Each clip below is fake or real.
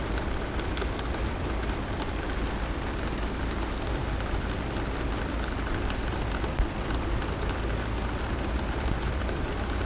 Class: real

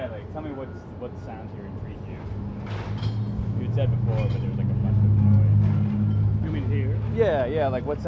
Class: real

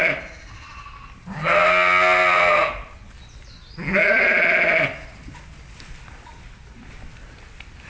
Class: real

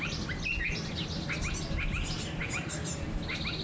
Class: real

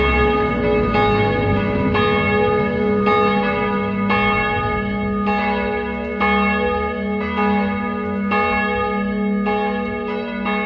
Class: real